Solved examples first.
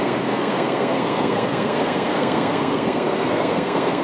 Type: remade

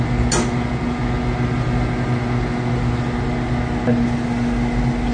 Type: recorded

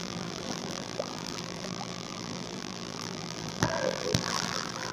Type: remade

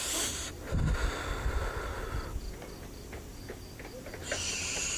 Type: recorded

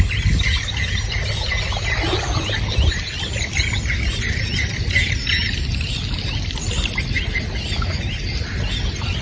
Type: recorded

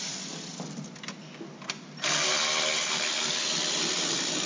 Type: recorded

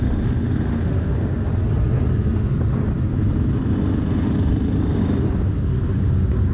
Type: recorded